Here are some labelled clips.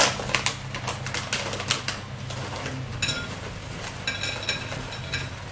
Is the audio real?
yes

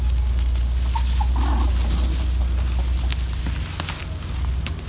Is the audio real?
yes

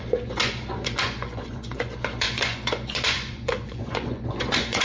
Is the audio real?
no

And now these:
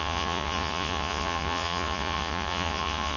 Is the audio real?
no